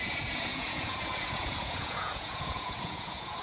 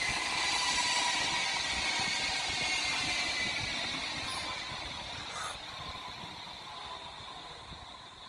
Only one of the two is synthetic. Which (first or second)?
first